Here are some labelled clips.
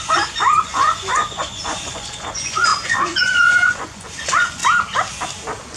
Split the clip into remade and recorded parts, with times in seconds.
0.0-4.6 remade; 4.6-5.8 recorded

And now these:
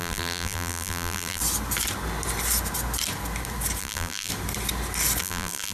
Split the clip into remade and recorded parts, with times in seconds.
0.0-1.4 remade; 1.4-3.8 recorded; 3.8-4.3 remade; 4.3-5.2 recorded; 5.2-5.7 remade